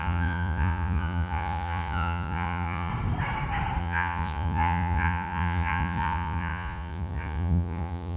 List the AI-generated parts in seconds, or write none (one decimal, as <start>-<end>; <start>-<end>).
0.0-2.9; 3.8-8.2